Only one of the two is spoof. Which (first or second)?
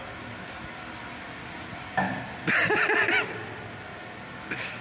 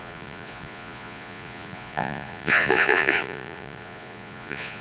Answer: second